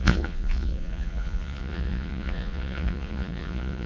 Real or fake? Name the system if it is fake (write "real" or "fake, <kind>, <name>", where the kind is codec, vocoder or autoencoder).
fake, vocoder, Vocos